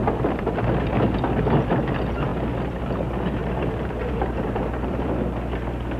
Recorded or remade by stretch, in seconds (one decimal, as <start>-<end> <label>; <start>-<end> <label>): 0.0-3.4 recorded; 3.4-5.1 remade; 5.1-6.0 recorded